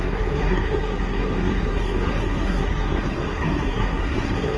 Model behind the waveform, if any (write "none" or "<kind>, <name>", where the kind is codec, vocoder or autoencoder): codec, SNAC